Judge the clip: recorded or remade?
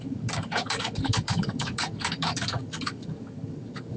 remade